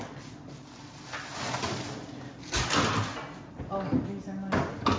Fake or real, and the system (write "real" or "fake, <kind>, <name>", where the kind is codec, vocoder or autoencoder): real